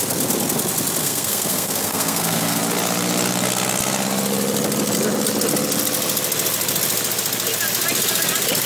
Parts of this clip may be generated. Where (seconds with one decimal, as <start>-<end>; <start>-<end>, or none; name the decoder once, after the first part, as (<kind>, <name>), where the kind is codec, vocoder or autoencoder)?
1.0-2.6 (codec, SNAC)